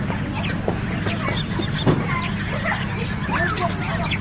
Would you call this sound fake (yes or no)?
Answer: no